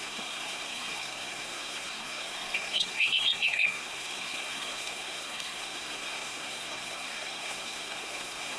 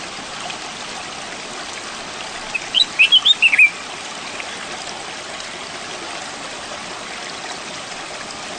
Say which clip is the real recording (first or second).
second